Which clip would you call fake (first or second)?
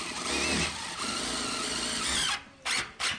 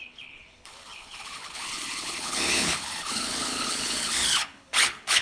second